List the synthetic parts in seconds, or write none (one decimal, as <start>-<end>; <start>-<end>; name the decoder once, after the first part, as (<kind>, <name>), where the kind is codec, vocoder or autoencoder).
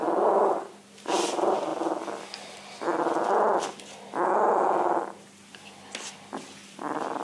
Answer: none